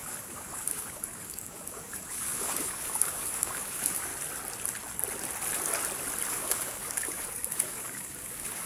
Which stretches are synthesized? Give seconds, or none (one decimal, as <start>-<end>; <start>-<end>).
0.0-4.1; 6.3-8.7